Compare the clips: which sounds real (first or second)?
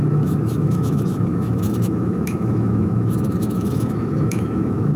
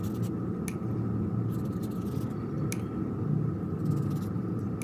second